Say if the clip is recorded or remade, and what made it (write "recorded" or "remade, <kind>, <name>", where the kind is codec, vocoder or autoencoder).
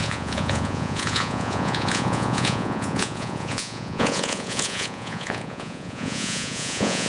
remade, vocoder, Vocos